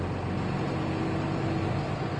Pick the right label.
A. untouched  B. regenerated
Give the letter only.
A